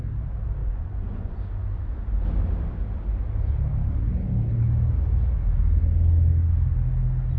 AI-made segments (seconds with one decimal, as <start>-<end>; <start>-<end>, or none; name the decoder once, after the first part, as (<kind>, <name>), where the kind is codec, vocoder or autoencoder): 0.6-1.4 (vocoder, Vocos)